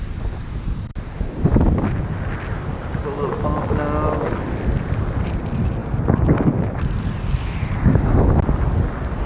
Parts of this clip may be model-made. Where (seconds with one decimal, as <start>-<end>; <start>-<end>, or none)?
none